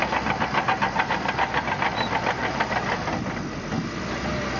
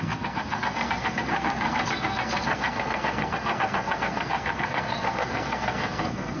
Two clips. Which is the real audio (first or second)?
first